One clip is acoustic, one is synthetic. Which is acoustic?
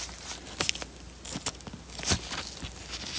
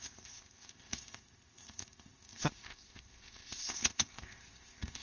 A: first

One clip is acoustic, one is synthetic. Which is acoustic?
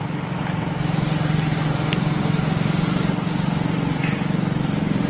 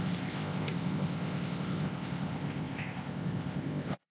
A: first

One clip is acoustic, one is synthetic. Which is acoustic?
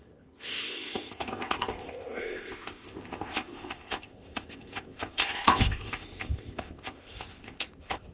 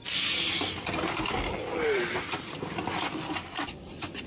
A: second